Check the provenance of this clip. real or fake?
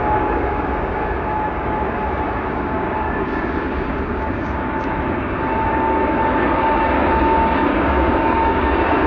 fake